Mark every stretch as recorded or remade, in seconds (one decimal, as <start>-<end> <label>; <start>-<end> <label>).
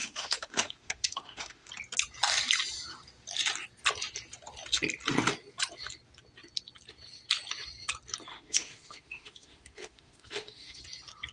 0.0-1.7 remade; 1.7-8.3 recorded; 8.3-10.8 remade; 10.8-11.3 recorded